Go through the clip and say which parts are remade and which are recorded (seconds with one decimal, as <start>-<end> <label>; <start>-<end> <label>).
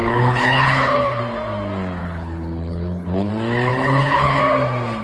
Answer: 0.0-1.2 remade; 1.2-2.0 recorded; 2.0-3.3 remade; 3.3-3.7 recorded; 3.7-4.4 remade; 4.4-5.0 recorded